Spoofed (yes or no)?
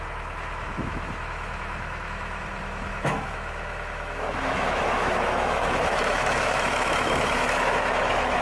yes